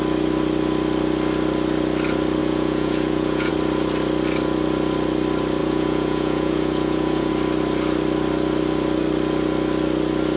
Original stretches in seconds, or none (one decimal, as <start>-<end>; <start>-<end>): 0.0-2.4; 3.5-5.6; 7.3-10.4